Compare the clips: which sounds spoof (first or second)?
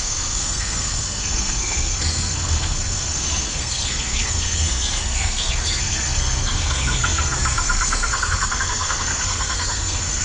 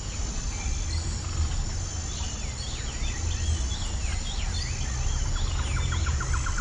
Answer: first